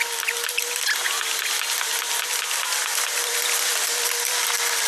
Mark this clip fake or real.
real